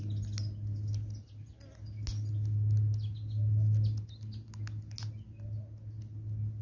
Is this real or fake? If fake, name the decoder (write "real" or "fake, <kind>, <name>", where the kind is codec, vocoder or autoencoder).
real